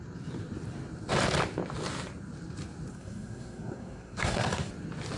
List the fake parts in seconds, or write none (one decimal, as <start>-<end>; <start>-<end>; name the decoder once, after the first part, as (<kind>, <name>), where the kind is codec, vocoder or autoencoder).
2.9-4.7 (codec, SNAC)